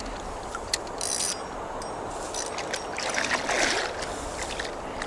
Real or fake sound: real